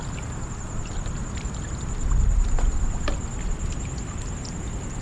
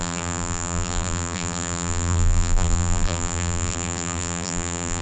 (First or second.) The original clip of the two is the first